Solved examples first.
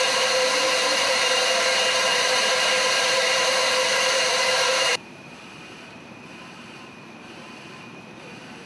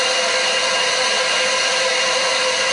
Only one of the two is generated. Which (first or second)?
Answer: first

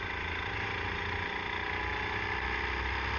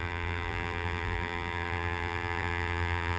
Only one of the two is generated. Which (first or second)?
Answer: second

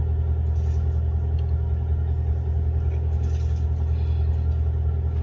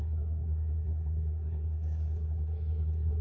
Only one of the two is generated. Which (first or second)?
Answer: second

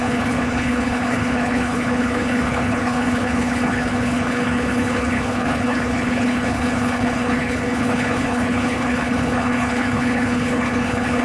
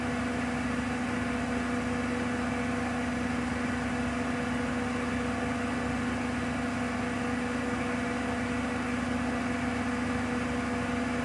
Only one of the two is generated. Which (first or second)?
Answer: first